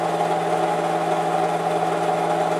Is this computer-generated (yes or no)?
no